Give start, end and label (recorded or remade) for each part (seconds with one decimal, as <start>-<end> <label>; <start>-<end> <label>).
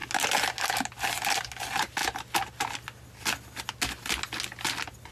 0.0-5.1 recorded